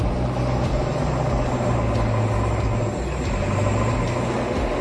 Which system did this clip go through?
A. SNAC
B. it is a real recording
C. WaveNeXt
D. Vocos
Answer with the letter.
B